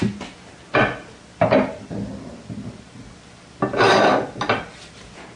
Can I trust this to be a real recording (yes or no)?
yes